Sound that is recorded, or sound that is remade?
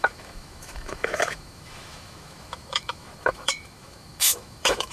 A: remade